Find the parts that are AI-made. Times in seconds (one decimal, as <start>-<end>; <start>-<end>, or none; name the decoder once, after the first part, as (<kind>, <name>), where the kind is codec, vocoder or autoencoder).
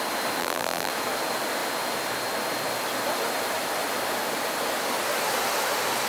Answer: 0.4-0.9 (vocoder, BigVGAN v2)